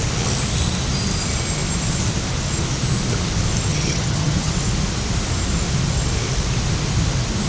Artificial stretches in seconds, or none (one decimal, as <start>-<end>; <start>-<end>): 3.7-4.5